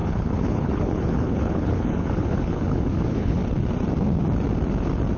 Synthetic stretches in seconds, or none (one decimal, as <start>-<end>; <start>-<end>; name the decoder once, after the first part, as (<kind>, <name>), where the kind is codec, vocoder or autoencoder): 0.0-3.4 (codec, HILCodec)